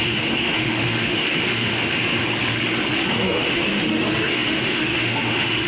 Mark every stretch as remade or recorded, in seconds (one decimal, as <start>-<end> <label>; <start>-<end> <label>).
0.0-2.2 remade; 2.2-3.1 recorded; 3.1-5.7 remade